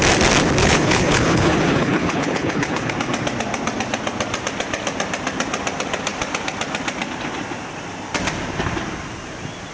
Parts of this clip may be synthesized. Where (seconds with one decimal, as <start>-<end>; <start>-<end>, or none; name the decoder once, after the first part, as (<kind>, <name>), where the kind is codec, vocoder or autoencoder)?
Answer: 0.6-2.9 (codec, HILCodec)